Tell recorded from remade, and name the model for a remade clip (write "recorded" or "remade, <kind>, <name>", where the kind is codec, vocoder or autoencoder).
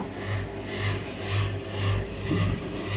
recorded